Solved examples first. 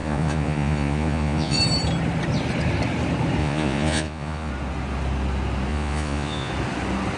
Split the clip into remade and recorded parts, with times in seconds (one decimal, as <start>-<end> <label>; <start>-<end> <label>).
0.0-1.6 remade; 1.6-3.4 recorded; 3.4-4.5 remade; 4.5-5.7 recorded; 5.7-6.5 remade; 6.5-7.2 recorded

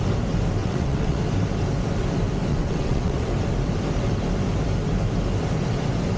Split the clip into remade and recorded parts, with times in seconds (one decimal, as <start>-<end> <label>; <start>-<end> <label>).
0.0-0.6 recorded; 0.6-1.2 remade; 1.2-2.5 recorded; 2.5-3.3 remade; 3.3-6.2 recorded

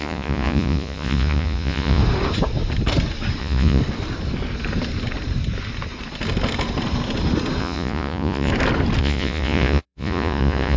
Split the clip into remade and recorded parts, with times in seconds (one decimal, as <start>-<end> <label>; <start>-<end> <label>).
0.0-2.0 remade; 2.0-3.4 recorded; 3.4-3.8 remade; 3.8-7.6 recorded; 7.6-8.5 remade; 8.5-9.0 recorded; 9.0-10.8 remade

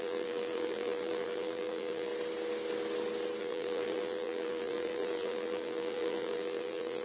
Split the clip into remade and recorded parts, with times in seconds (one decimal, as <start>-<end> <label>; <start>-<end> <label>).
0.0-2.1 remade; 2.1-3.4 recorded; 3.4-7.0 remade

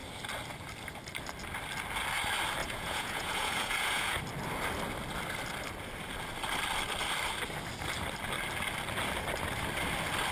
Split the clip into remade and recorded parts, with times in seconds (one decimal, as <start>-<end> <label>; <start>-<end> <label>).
0.0-2.6 recorded; 2.6-4.2 remade; 4.2-10.3 recorded